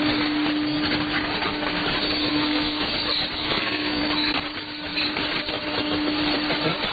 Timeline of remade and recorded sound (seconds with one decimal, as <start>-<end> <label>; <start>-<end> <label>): 0.0-2.3 recorded; 2.3-2.9 remade; 2.9-3.4 recorded; 3.4-4.0 remade; 4.0-6.9 recorded